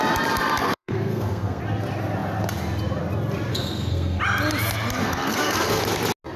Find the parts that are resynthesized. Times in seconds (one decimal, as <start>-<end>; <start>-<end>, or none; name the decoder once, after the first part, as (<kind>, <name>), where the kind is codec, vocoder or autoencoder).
0.6-1.6 (codec, SNAC); 3.5-4.2; 5.0-5.8